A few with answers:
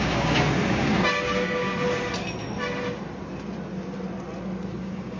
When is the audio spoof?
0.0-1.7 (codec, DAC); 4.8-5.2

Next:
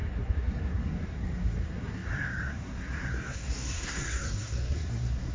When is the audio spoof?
0.0-5.3 (codec, SNAC)

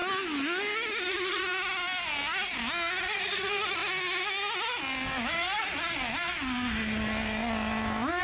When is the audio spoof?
1.1-1.5 (vocoder, Vocos); 3.0-3.8

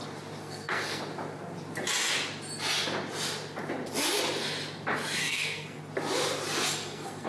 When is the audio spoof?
0.4-1.0 (codec, SNAC); 5.2-5.8; 6.7-7.3

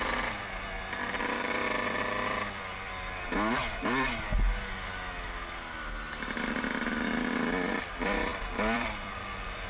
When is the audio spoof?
0.0-3.6 (vocoder, BigVGAN v2); 6.4-9.7

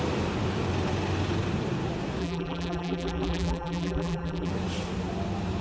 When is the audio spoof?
2.2-4.5 (vocoder, BigVGAN v2)

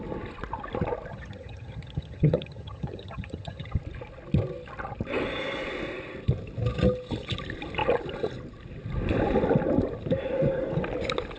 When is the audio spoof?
1.1-3.8 (vocoder, HiFi-GAN)